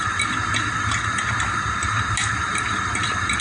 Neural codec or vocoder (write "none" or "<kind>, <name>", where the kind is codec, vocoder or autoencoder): none